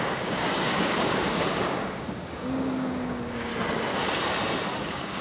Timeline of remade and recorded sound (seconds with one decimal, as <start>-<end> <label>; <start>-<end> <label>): 0.0-3.5 remade; 3.5-4.8 recorded; 4.8-5.2 remade